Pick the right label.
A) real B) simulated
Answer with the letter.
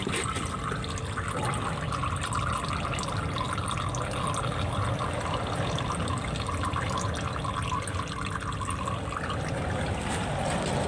A